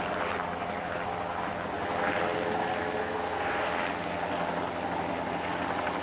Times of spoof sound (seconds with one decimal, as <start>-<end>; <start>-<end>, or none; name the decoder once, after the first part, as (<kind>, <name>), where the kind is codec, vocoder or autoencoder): 3.0-3.7 (codec, SNAC)